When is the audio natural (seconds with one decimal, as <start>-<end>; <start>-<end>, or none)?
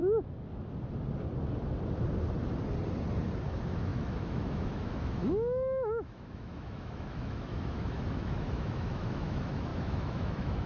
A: 0.0-3.4